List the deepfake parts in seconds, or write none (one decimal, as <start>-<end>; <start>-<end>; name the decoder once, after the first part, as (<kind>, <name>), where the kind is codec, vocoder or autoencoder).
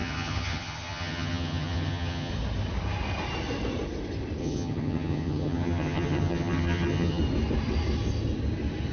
0.0-2.3 (vocoder, HiFi-GAN); 4.4-7.2